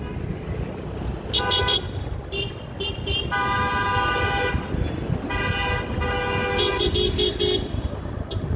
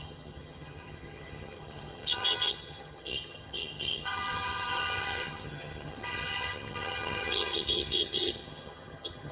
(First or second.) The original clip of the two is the first